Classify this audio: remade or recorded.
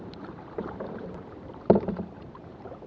remade